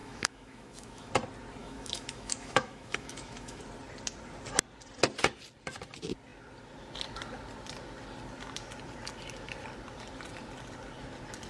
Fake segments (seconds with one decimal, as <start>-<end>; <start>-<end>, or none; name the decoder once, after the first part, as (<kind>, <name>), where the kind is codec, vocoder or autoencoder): 0.0-1.1 (autoencoder, DAC-VAE); 1.6-3.6

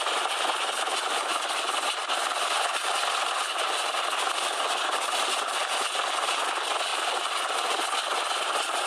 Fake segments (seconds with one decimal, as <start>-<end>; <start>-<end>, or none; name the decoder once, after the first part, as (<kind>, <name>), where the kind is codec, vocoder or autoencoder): none

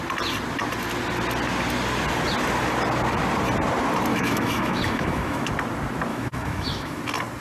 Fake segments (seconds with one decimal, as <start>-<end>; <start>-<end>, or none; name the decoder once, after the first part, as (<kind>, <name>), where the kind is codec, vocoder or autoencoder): 4.1-5.5 (autoencoder, DAC-VAE); 6.1-7.0

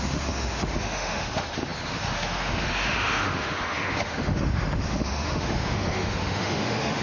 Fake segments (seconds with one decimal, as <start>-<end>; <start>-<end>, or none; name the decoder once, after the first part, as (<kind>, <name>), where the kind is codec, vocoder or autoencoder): 0.0-7.0 (autoencoder, DAC-VAE)

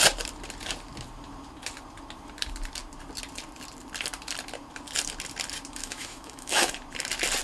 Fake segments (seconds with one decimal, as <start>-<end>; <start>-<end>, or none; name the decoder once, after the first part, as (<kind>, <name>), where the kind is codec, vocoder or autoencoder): 5.8-6.7 (autoencoder, DAC-VAE)

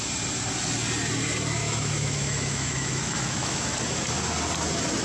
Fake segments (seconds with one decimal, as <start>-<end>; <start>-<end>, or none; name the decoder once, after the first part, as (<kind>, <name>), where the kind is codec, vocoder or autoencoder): 1.6-3.8 (autoencoder, DAC-VAE)